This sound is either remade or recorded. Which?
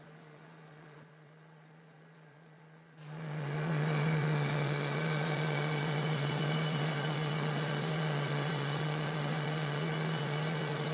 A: remade